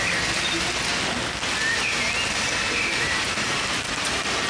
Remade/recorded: recorded